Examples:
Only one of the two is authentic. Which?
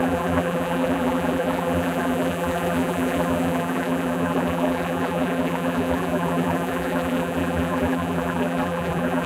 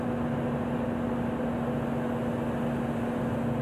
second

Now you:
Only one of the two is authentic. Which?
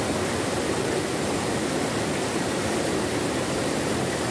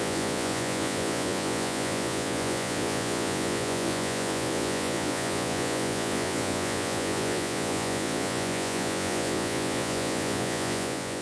first